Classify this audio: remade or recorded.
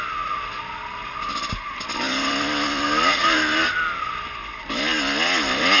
recorded